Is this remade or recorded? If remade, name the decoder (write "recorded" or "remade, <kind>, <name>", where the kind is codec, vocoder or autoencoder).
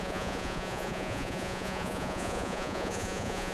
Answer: remade, vocoder, Vocos